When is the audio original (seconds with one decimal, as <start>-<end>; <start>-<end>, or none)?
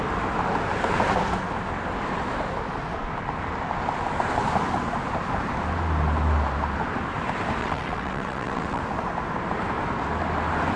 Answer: 0.0-7.6; 8.8-10.8